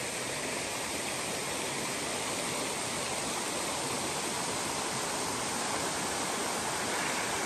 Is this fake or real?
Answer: real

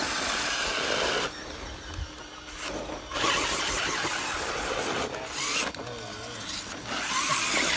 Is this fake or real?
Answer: real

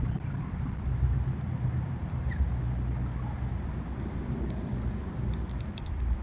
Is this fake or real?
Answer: fake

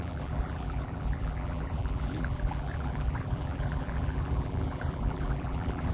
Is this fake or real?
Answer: fake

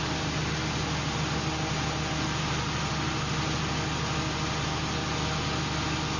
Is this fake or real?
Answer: real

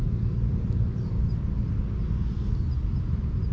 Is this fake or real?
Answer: real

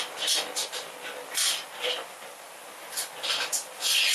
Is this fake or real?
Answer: fake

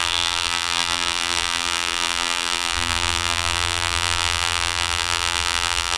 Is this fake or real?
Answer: fake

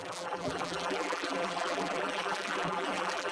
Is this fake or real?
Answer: fake